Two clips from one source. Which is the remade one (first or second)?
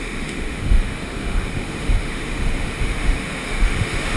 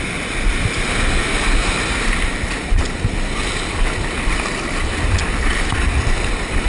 first